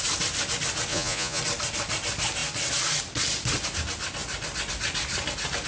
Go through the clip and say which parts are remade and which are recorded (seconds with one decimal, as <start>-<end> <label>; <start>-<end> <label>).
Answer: 0.0-0.9 recorded; 0.9-1.4 remade; 1.4-5.7 recorded